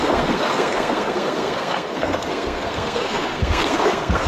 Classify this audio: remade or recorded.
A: remade